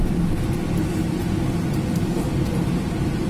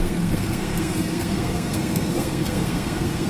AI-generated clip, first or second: second